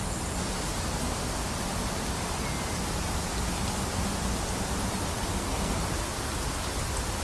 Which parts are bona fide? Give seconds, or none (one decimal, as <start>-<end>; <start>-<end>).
0.0-5.3; 5.8-7.2